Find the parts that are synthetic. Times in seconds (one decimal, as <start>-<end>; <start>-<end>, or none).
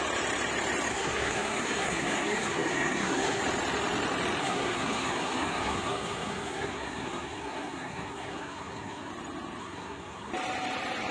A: 0.9-3.4; 4.4-9.1; 9.6-10.3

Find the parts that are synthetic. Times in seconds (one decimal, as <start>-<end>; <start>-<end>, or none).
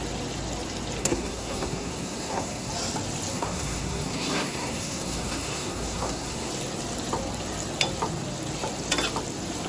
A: 1.0-2.7; 3.3-6.5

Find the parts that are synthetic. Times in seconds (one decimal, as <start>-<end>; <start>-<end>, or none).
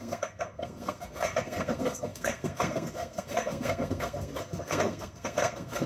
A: 0.0-5.9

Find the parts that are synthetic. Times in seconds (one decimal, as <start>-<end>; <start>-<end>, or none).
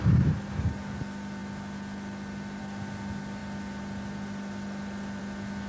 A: none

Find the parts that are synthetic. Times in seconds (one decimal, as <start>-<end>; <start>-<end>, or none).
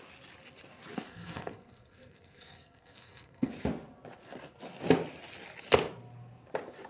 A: 1.1-3.5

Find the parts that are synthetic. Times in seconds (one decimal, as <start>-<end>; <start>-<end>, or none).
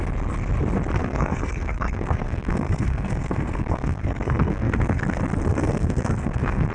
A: 1.0-5.0; 5.5-6.7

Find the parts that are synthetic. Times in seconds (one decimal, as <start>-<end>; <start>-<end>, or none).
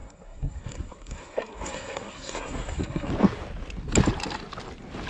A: 0.0-3.1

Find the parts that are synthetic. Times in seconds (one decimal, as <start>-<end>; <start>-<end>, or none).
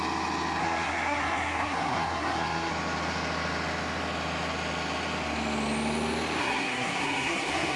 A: 0.6-2.7; 6.4-7.8